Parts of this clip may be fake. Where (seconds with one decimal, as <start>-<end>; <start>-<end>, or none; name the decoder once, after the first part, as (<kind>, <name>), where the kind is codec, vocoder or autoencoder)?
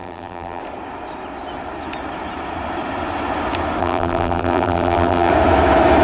0.0-0.6 (vocoder, BigVGAN v2); 3.8-5.3